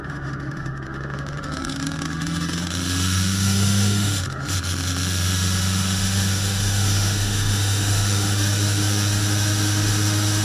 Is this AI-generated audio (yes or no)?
yes